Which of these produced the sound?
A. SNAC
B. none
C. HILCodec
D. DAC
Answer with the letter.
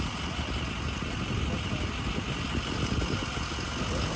B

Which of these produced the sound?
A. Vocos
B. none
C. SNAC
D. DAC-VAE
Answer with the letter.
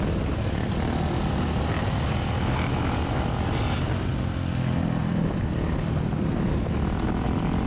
B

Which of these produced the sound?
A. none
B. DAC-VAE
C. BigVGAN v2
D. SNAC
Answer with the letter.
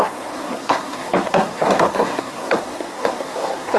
D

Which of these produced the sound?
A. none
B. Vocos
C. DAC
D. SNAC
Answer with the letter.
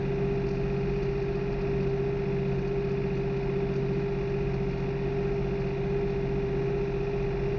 A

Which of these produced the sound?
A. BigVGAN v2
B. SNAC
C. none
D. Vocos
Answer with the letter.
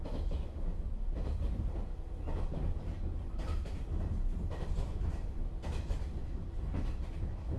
C